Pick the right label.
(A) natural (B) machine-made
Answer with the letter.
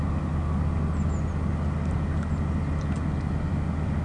A